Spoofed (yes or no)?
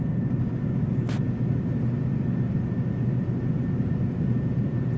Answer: no